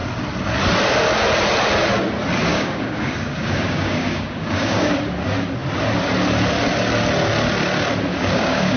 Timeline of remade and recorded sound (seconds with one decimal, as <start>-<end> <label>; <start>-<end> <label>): 0.0-2.5 recorded; 2.5-4.9 remade; 4.9-8.1 recorded; 8.1-8.8 remade